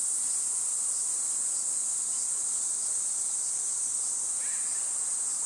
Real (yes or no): yes